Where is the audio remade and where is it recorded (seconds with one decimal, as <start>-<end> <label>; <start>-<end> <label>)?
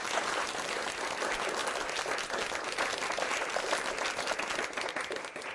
0.0-1.6 recorded; 1.6-3.9 remade; 3.9-5.5 recorded